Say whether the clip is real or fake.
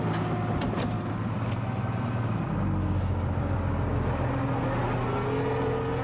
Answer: real